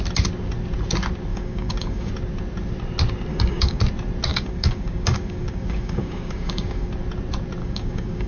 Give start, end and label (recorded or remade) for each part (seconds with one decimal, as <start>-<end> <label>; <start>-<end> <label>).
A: 0.0-1.3 recorded; 1.3-2.1 remade; 2.1-3.3 recorded; 3.3-3.8 remade; 3.8-4.3 recorded; 4.3-6.9 remade; 6.9-7.6 recorded; 7.6-8.3 remade